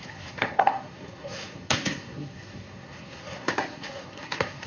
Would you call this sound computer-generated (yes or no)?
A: yes